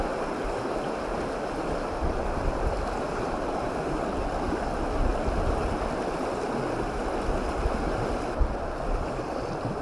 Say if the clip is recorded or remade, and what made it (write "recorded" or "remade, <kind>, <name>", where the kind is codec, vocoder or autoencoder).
recorded